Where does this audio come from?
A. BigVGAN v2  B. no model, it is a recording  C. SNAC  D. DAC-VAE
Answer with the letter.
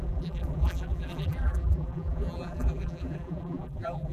A